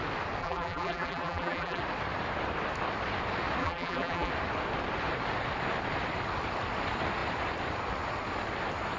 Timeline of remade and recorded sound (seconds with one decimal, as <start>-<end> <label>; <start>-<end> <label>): 0.0-0.4 recorded; 0.4-1.8 remade; 1.8-3.6 recorded; 3.6-4.3 remade; 4.3-9.0 recorded